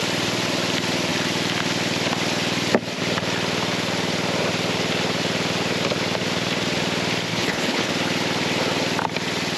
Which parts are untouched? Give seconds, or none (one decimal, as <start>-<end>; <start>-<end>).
0.0-7.3; 7.9-9.6